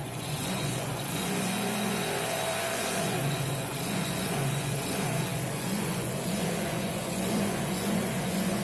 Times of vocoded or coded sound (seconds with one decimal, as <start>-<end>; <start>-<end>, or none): 0.0-8.6